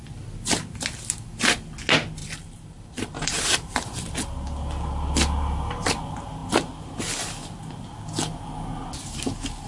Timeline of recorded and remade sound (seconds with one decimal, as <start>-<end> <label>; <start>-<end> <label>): 0.0-2.2 recorded; 2.2-4.1 remade; 4.1-9.7 recorded